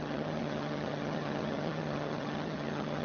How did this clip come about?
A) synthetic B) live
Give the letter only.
A